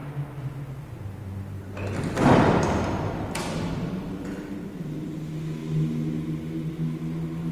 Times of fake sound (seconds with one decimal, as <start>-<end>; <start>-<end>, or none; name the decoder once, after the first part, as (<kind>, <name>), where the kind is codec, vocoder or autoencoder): none